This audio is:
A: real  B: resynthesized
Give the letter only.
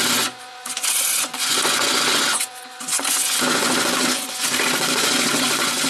B